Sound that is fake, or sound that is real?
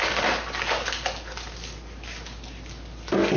real